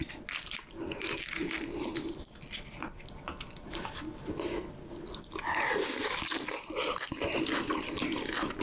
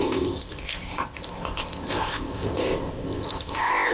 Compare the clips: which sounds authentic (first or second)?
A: first